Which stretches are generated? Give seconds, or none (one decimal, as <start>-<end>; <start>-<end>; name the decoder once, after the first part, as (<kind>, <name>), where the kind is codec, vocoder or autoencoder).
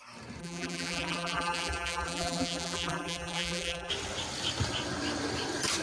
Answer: 0.4-3.9 (vocoder, BigVGAN v2)